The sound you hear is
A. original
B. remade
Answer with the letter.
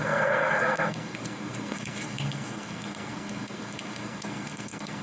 B